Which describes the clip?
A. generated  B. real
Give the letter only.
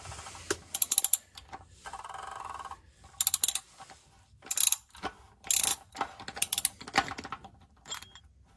B